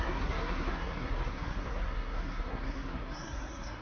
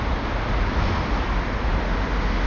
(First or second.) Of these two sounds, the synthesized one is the first